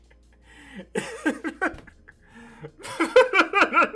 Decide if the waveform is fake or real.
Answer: real